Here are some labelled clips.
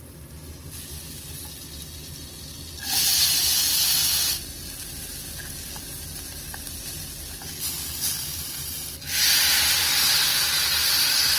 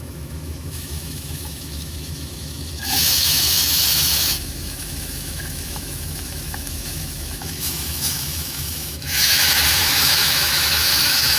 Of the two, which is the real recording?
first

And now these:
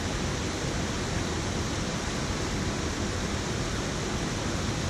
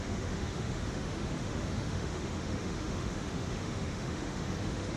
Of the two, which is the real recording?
first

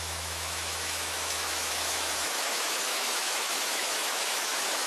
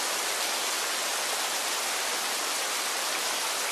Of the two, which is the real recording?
second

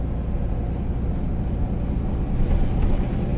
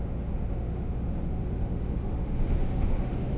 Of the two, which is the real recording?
first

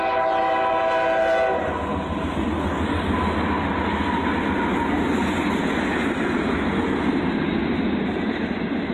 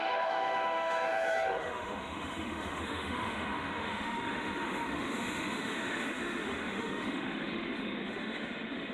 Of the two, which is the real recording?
first